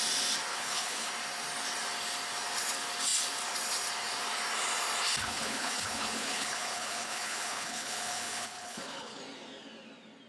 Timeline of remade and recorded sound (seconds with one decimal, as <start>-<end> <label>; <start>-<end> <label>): 0.0-0.5 recorded; 0.5-1.1 remade; 1.1-5.2 recorded; 5.2-9.2 remade; 9.2-10.3 recorded